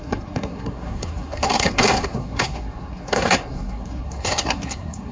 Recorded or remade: remade